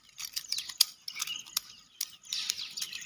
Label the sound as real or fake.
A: real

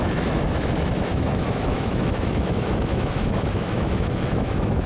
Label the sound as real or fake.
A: fake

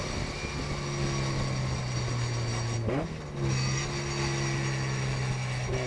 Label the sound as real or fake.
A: real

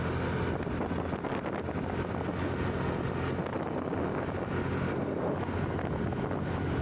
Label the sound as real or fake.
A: real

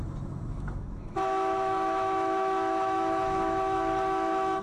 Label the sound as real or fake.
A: fake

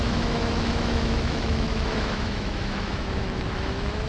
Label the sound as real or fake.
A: fake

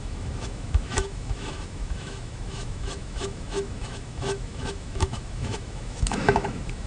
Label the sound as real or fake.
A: fake